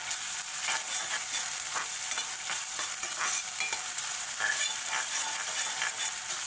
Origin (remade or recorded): recorded